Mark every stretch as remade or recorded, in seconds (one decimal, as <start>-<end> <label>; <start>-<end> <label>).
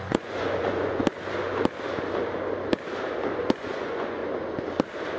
0.0-1.0 remade; 1.0-3.4 recorded; 3.4-4.2 remade; 4.2-5.2 recorded